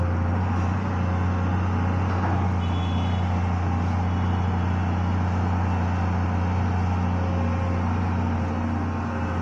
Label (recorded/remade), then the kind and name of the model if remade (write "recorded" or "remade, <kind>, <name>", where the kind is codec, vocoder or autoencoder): recorded